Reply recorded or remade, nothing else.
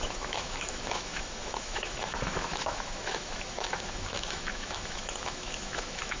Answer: remade